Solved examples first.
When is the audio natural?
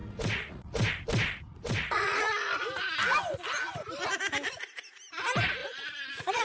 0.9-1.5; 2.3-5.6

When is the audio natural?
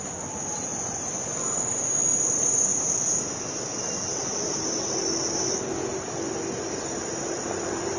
0.0-0.7; 1.9-8.0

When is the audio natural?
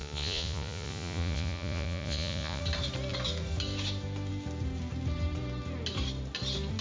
2.6-6.8